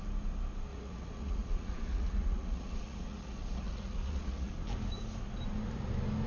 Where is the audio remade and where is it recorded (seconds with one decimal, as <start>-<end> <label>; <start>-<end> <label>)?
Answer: 0.0-0.7 recorded; 0.7-4.5 remade; 4.5-6.3 recorded